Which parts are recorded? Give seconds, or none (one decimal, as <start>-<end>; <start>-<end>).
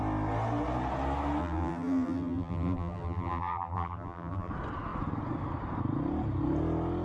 0.0-1.4; 4.5-7.0